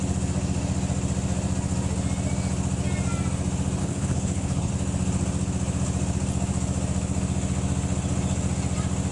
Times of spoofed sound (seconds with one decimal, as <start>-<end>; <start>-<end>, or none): 3.8-4.7